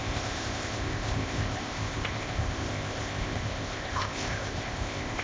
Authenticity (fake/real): fake